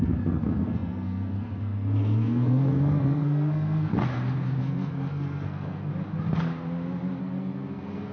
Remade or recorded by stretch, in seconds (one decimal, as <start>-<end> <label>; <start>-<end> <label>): 0.0-3.9 remade; 3.9-4.6 recorded; 4.6-5.9 remade; 5.9-7.2 recorded; 7.2-8.1 remade